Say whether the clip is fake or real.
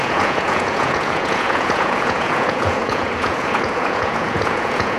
fake